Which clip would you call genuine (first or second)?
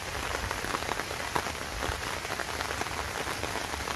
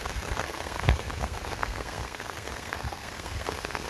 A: first